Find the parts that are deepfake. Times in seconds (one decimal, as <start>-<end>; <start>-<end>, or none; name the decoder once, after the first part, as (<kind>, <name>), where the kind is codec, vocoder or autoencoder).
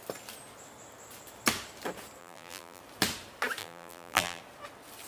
2.2-2.8 (vocoder, BigVGAN v2); 3.6-4.4